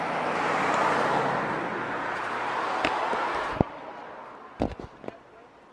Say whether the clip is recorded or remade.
recorded